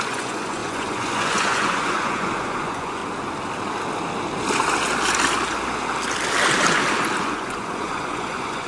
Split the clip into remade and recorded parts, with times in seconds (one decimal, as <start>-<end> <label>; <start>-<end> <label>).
0.0-3.0 remade; 3.0-7.2 recorded; 7.2-8.7 remade